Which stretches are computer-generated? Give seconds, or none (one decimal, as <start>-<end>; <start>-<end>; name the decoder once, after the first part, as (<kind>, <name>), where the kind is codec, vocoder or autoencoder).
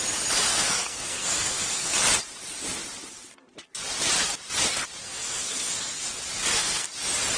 0.5-1.9 (codec, SNAC); 5.0-6.0; 6.4-6.9